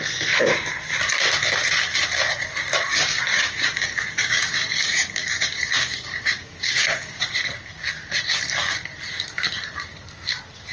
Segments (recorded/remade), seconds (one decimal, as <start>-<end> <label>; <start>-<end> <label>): 0.0-2.9 recorded; 2.9-7.2 remade; 7.2-10.7 recorded